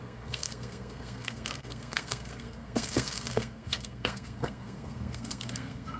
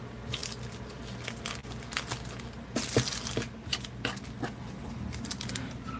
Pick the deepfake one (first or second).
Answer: first